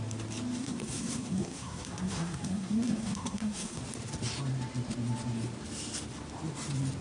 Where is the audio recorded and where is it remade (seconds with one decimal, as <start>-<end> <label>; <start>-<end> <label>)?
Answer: 0.0-0.6 recorded; 0.6-3.8 remade; 3.8-7.0 recorded

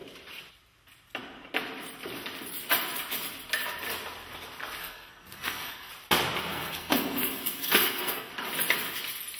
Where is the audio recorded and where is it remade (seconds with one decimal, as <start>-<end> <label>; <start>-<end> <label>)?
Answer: 0.0-4.8 recorded; 4.8-5.9 remade; 5.9-6.5 recorded; 6.5-8.3 remade; 8.3-9.4 recorded

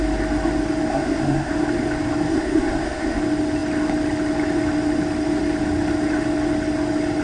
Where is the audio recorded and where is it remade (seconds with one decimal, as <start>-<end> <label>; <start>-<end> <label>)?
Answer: 0.0-0.9 recorded; 0.9-1.5 remade; 1.5-2.3 recorded; 2.3-3.2 remade; 3.2-7.2 recorded

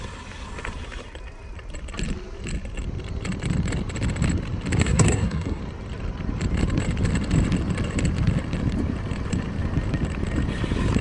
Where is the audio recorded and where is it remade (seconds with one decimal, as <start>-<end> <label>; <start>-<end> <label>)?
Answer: 0.0-4.8 recorded; 4.8-5.6 remade; 5.6-11.0 recorded

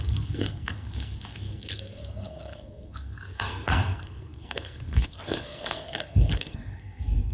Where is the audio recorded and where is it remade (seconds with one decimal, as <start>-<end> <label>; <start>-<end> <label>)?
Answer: 0.0-7.3 remade

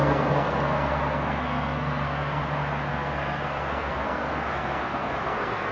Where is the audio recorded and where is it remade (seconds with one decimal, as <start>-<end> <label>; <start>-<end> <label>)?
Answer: 0.0-2.4 remade; 2.4-2.9 recorded; 2.9-5.7 remade